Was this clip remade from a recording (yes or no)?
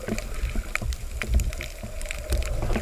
no